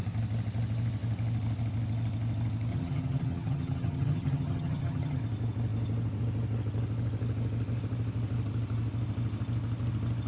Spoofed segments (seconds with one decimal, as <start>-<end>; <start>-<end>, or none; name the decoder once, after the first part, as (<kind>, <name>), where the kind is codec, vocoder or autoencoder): 2.7-5.2 (vocoder, HiFi-GAN)